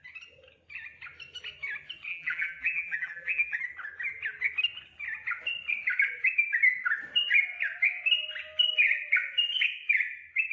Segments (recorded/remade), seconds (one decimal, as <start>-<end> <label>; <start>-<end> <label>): 0.0-2.1 recorded; 2.1-3.6 remade; 3.6-10.5 recorded